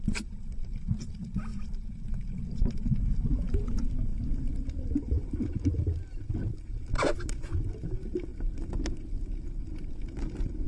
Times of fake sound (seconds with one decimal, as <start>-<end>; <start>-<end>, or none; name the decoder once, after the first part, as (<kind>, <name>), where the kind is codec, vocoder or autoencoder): none